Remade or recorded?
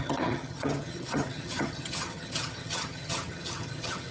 remade